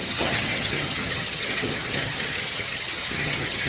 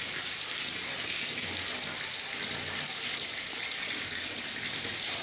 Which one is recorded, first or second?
second